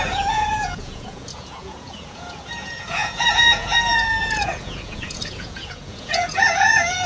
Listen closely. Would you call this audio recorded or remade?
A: remade